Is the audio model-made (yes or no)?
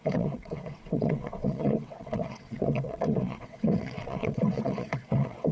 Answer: yes